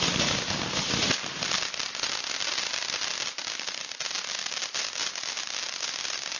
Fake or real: real